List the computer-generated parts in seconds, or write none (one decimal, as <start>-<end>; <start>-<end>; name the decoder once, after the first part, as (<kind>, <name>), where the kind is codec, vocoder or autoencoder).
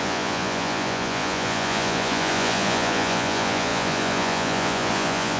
0.0-5.4 (vocoder, Vocos)